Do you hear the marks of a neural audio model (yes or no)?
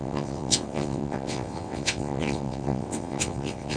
yes